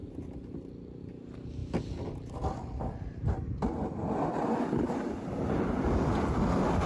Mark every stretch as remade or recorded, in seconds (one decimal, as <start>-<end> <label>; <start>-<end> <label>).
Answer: 0.0-6.9 recorded